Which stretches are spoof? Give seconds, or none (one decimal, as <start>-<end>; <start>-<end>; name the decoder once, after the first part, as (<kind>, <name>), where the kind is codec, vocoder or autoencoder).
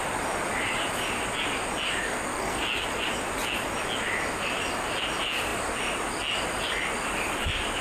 2.0-2.6 (codec, SNAC)